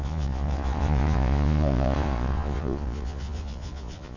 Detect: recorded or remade remade